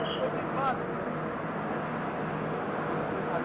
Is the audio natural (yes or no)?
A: yes